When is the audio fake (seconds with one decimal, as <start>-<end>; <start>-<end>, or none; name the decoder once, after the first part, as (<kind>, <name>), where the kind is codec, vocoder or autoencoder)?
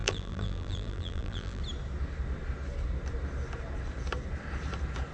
0.0-1.6 (vocoder, BigVGAN v2)